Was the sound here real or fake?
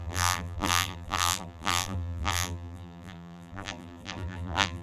fake